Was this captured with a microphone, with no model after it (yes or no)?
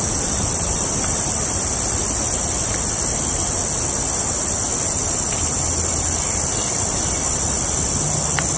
yes